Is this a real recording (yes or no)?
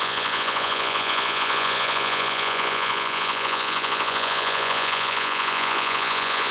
no